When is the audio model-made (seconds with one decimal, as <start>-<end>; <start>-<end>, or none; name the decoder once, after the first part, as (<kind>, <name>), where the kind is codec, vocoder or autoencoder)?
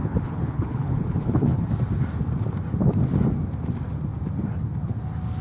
0.0-1.7 (codec, HILCodec)